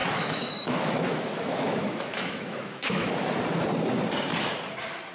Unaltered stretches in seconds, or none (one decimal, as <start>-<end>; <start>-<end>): 3.1-5.1